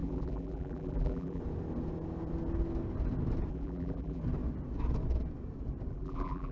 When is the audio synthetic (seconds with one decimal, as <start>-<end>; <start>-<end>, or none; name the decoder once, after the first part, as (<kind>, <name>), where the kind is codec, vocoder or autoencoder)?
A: 0.0-1.4 (vocoder, BigVGAN v2); 3.5-4.2; 5.9-6.5